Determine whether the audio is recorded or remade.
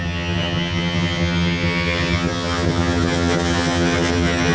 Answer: remade